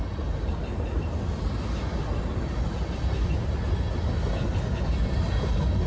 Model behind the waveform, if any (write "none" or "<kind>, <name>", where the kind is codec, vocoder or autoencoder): none